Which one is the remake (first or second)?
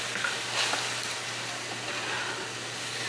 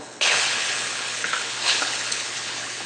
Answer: second